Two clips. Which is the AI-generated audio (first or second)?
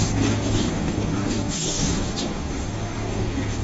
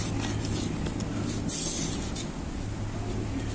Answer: first